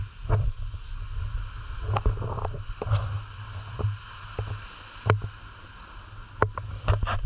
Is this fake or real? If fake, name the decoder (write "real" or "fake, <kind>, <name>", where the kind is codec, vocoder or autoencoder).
real